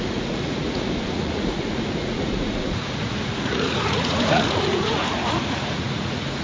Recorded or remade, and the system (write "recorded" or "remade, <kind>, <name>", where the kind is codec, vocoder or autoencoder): remade, vocoder, Vocos